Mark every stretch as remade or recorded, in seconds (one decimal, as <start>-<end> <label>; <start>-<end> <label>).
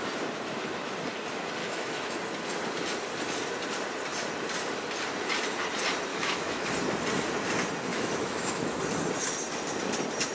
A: 0.0-1.6 recorded; 1.6-2.1 remade; 2.1-6.1 recorded; 6.1-6.7 remade; 6.7-7.9 recorded; 7.9-8.8 remade; 8.8-10.3 recorded